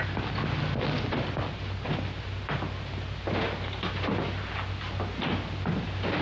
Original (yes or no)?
yes